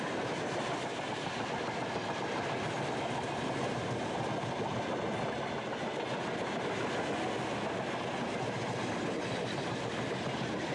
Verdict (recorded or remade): recorded